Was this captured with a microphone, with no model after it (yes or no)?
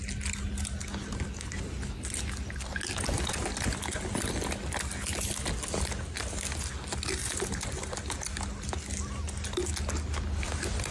yes